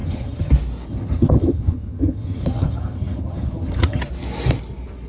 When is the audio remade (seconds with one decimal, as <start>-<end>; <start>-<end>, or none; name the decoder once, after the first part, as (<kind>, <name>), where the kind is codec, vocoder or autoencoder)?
0.0-0.5 (vocoder, HiFi-GAN); 0.9-4.0